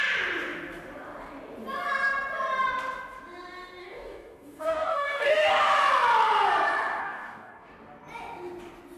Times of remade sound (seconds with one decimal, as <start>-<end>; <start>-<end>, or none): 3.8-5.5; 7.0-7.7